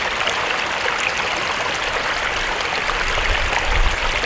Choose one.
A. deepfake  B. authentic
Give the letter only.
B